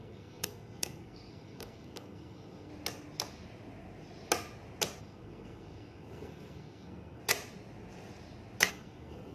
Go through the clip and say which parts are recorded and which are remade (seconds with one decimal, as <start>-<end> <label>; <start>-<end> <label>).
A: 0.0-2.7 remade; 2.7-5.0 recorded; 5.0-7.2 remade; 7.2-8.7 recorded; 8.7-9.3 remade

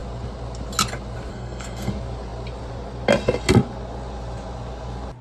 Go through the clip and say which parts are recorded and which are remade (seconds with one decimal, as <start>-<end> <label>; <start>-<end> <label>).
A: 0.0-1.3 recorded; 1.3-1.9 remade; 1.9-5.2 recorded